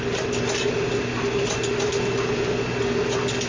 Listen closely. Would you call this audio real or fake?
real